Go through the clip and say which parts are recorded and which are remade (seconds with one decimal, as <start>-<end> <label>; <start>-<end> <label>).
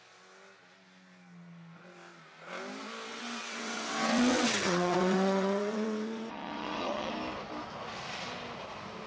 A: 0.0-3.1 recorded; 3.1-7.1 remade; 7.1-9.1 recorded